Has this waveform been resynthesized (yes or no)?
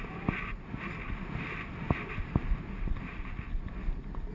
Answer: no